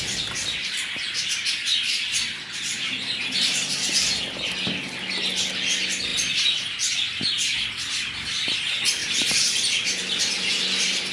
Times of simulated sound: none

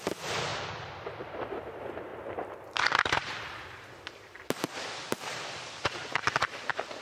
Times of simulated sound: 0.5-1.6 (vocoder, BigVGAN v2); 2.1-5.7

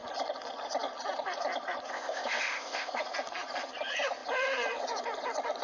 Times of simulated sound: 1.9-3.0 (codec, ZipCodec)

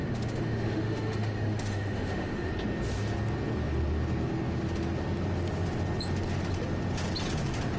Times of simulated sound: 0.0-2.5 (autoencoder, DAC-VAE)

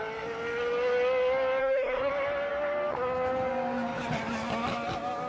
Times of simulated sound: 1.6-2.1 (codec, SNAC)

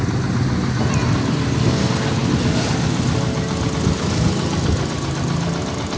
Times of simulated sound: none

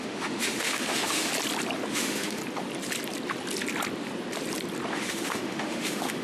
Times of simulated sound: 0.0-1.3 (autoencoder, DAC-VAE); 1.9-2.4; 4.9-6.2

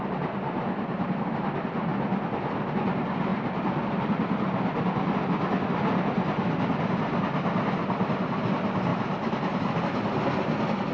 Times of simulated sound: none